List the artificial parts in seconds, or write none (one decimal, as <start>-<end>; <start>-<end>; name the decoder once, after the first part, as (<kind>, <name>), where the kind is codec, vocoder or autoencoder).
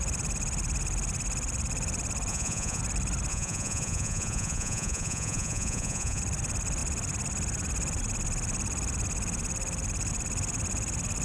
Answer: 2.3-2.8 (vocoder, Vocos); 3.3-6.2